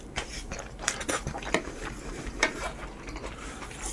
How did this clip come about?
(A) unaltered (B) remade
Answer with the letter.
B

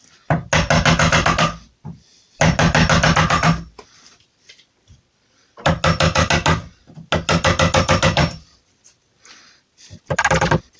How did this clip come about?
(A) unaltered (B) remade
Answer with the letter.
A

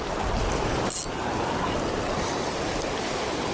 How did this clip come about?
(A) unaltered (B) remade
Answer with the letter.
A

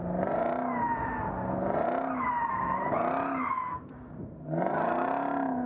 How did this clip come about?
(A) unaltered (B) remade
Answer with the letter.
A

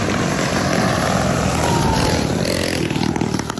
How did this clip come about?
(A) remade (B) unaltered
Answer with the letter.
B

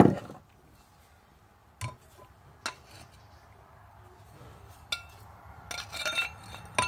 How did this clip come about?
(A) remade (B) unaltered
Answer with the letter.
B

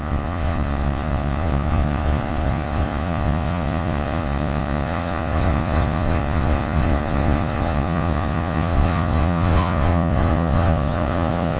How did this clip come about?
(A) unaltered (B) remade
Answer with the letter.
B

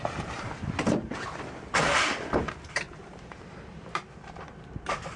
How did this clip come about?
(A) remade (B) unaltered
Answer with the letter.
A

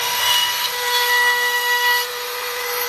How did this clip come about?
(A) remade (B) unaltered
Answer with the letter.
A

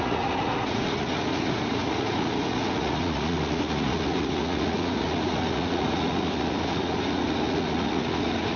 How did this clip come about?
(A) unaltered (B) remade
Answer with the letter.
B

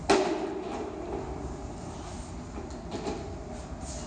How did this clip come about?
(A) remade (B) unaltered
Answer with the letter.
B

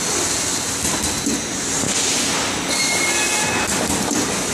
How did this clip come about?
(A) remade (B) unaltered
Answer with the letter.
B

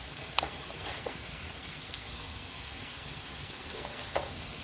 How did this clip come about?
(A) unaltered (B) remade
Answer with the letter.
B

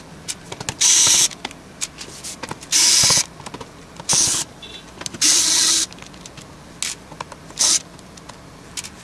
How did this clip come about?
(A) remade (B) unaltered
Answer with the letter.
B